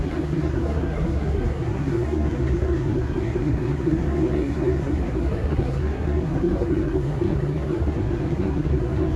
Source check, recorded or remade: remade